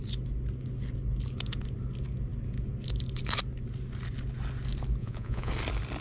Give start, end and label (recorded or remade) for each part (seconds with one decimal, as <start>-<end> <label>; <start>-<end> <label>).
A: 0.0-5.0 recorded; 5.0-5.5 remade; 5.5-6.0 recorded